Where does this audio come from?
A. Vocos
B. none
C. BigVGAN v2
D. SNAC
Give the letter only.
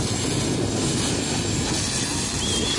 B